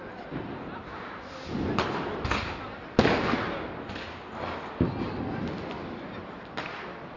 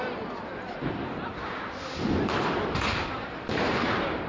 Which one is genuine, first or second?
first